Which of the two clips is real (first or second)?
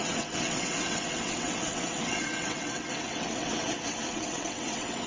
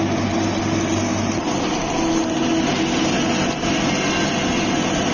second